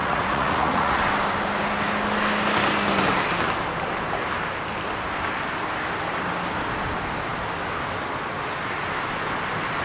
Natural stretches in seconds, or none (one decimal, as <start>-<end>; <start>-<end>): 1.0-9.8